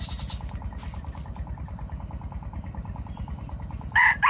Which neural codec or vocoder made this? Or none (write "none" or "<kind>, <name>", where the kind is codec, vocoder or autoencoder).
none